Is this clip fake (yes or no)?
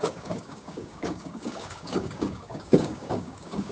yes